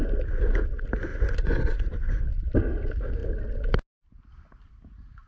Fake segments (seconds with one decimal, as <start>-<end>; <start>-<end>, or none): 1.1-2.2